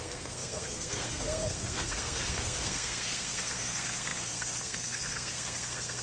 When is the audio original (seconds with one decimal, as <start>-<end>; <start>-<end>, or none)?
none